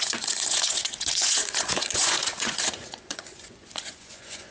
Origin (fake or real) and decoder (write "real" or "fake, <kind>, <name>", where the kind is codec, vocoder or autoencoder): fake, vocoder, Vocos